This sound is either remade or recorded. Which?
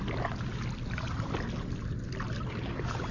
recorded